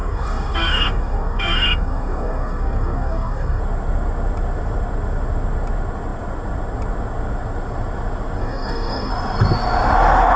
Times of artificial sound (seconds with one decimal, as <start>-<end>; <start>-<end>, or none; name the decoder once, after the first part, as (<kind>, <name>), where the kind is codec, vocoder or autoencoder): 0.0-3.6 (codec, DAC); 8.4-9.1